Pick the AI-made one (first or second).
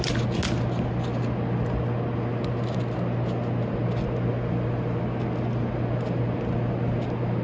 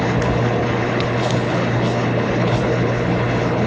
second